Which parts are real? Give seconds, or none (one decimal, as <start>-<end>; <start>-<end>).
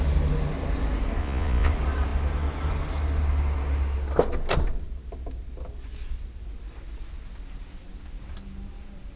0.0-1.2; 1.7-9.2